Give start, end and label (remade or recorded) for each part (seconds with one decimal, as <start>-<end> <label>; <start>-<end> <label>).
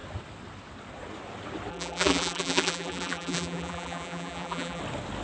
0.0-1.7 recorded; 1.7-4.8 remade; 4.8-5.2 recorded